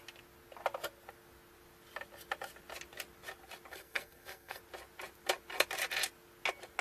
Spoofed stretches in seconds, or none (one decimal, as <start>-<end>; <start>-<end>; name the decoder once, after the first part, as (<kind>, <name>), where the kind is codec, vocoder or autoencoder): 3.7-4.6 (codec, SNAC)